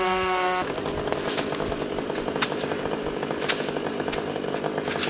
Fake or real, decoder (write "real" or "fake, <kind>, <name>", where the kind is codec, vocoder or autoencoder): real